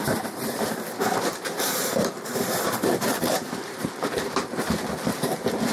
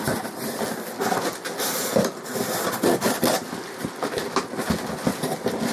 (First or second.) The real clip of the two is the second